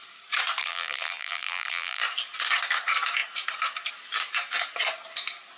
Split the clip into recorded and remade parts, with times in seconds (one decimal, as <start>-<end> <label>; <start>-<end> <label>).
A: 0.0-0.6 recorded; 0.6-2.0 remade; 2.0-5.6 recorded